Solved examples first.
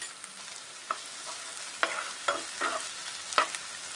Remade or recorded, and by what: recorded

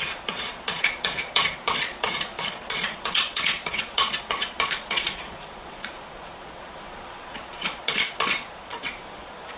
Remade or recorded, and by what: remade, vocoder, Vocos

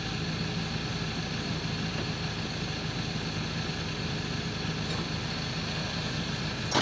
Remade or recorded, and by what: recorded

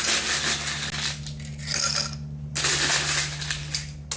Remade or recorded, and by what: recorded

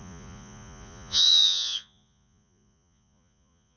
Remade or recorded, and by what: remade, vocoder, Vocos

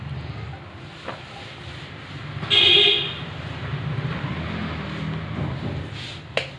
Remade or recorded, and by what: recorded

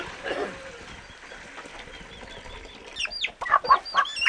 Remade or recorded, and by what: recorded